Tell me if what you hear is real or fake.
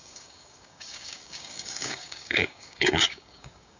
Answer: fake